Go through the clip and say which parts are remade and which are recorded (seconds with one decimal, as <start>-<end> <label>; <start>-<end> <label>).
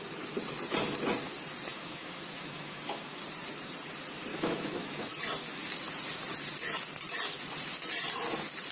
0.0-1.7 recorded; 1.7-3.2 remade; 3.2-4.3 recorded; 4.3-5.1 remade; 5.1-8.7 recorded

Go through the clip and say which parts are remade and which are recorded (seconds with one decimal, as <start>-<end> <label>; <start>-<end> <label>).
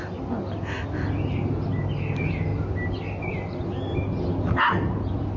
0.0-5.4 recorded